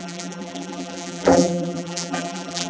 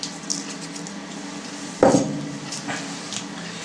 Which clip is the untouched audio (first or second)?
second